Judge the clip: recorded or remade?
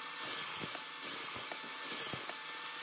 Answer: recorded